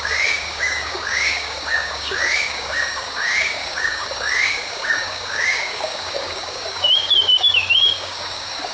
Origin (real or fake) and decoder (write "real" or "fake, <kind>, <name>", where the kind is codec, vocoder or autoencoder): fake, codec, DAC